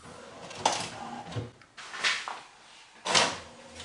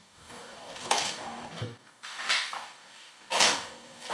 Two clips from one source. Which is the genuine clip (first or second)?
first